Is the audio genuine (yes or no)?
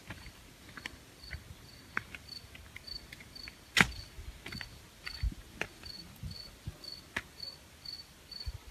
yes